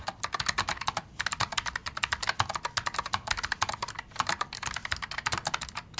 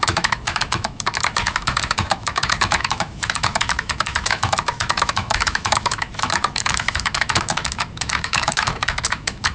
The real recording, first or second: first